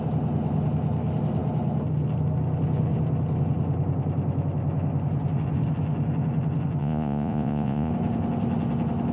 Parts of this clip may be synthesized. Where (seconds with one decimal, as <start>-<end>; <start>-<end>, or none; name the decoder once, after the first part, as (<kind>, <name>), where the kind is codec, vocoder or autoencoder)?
6.8-7.9 (vocoder, Vocos)